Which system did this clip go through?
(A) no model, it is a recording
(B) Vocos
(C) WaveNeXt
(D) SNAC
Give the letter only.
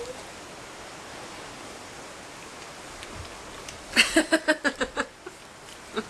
A